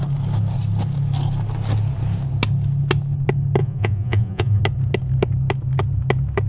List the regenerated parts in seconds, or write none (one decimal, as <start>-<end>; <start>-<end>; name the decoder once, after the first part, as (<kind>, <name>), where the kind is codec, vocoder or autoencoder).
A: 3.6-4.6 (vocoder, Vocos)